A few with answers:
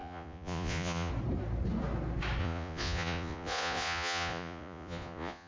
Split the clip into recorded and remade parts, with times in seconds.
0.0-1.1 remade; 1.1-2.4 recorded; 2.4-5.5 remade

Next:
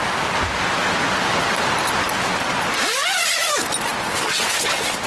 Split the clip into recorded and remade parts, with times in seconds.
0.0-5.1 recorded

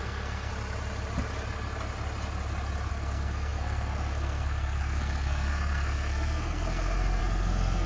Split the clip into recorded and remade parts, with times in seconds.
0.0-0.5 remade; 0.5-2.9 recorded; 2.9-7.9 remade

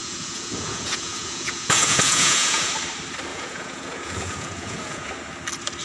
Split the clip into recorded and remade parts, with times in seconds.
0.0-2.7 remade; 2.7-3.3 recorded; 3.3-5.1 remade; 5.1-5.8 recorded

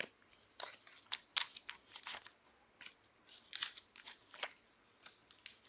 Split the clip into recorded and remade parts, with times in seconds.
0.0-5.7 recorded

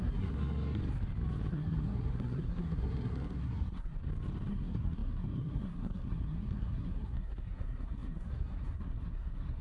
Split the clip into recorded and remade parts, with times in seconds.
0.0-0.8 remade; 0.8-1.5 recorded; 1.5-3.9 remade; 3.9-4.5 recorded; 4.5-9.6 remade